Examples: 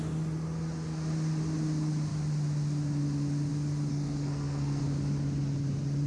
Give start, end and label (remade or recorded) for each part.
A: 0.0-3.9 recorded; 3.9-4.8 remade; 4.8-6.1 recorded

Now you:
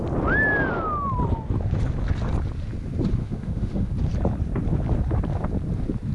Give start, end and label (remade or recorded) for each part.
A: 0.0-3.2 recorded; 3.2-3.9 remade; 3.9-6.1 recorded